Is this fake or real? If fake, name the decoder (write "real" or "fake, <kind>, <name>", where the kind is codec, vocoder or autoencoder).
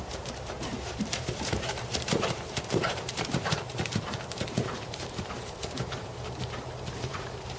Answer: fake, vocoder, BigVGAN v2